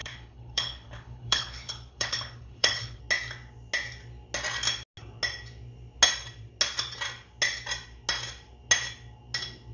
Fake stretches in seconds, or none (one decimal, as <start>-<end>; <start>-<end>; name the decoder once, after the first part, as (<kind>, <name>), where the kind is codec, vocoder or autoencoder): 0.0-3.0 (codec, HILCodec)